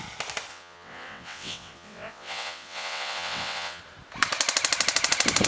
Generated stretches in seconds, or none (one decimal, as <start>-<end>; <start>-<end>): 0.5-3.8